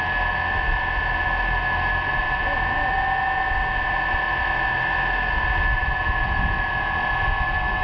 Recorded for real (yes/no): yes